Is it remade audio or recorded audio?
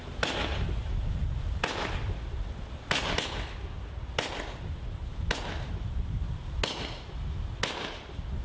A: recorded